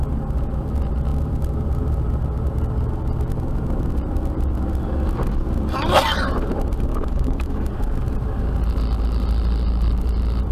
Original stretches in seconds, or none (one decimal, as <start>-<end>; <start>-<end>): 0.0-6.9; 7.7-10.5